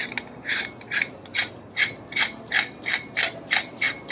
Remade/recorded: recorded